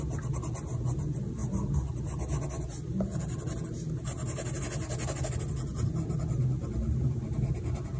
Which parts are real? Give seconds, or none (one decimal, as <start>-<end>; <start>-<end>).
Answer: 0.0-8.0